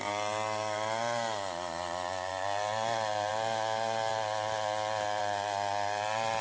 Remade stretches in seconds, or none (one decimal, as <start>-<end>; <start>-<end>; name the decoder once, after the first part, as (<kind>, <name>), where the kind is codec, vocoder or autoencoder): none